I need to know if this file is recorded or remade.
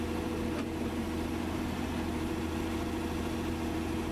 recorded